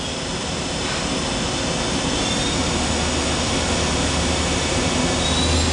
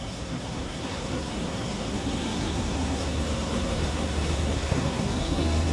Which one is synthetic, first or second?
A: second